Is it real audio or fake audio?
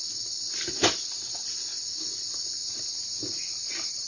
real